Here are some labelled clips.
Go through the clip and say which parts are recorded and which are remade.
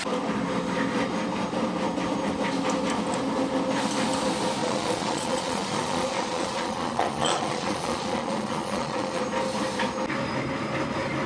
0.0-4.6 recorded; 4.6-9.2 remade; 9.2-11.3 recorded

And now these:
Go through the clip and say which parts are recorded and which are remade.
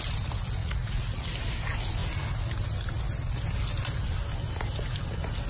0.0-0.6 recorded; 0.6-1.3 remade; 1.3-5.5 recorded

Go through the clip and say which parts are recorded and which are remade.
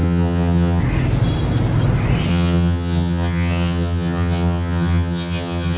0.0-0.8 remade; 0.8-2.3 recorded; 2.3-5.8 remade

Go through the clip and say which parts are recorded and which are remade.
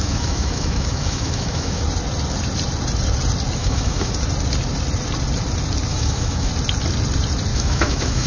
0.0-1.8 remade; 1.8-3.6 recorded; 3.6-4.1 remade; 4.1-5.9 recorded; 5.9-6.5 remade; 6.5-7.5 recorded; 7.5-8.3 remade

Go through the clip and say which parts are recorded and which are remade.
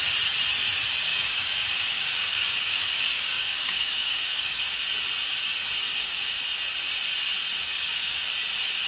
0.0-1.1 recorded; 1.1-4.6 remade; 4.6-5.9 recorded; 5.9-6.4 remade; 6.4-7.6 recorded; 7.6-8.3 remade; 8.3-8.9 recorded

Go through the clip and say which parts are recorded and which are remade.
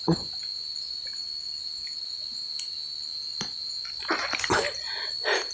0.0-5.5 recorded